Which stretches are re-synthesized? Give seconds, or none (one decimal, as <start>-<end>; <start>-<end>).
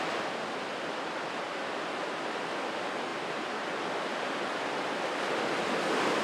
none